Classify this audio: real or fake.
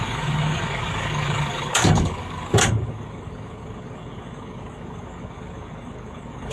fake